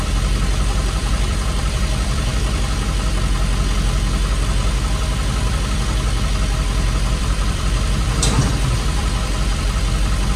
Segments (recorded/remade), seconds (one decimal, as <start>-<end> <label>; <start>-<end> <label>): 0.0-2.3 remade; 2.3-7.1 recorded; 7.1-10.4 remade